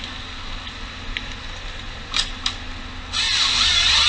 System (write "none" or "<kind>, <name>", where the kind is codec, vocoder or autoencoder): none